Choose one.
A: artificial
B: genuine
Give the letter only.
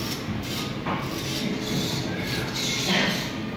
B